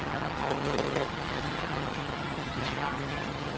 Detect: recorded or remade remade